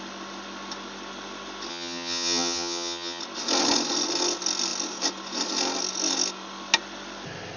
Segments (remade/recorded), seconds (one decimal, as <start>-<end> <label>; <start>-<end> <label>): 0.0-1.7 recorded; 1.7-3.2 remade; 3.2-7.6 recorded